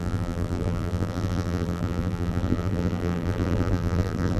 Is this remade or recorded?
remade